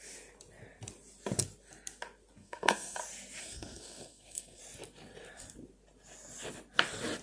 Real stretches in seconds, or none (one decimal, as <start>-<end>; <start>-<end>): 0.0-2.4; 3.0-3.4; 4.6-7.2

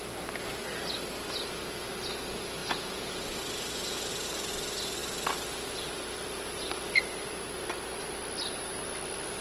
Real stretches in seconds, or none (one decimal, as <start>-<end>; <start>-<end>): 0.0-2.6; 3.2-9.4

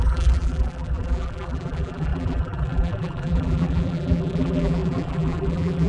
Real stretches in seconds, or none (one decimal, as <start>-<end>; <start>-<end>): none

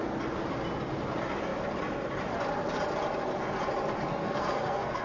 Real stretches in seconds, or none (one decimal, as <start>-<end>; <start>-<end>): 0.0-4.2

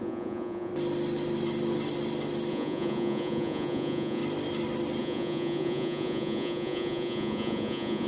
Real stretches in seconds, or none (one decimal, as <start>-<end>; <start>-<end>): 0.7-2.5; 4.2-5.0

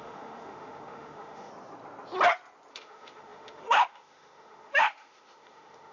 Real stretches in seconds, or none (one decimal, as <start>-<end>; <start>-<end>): 1.5-2.7

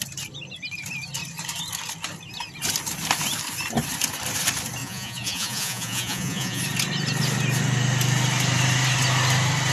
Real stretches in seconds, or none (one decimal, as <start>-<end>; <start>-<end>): 0.0-4.8; 6.6-9.7

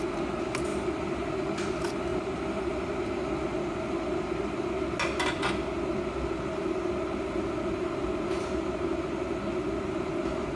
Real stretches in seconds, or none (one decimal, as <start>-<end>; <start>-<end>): 0.0-10.6